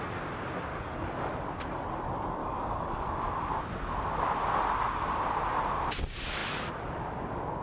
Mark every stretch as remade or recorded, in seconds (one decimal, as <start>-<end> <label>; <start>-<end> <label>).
0.0-0.7 recorded; 0.7-1.3 remade; 1.3-2.4 recorded; 2.4-3.5 remade; 3.5-7.6 recorded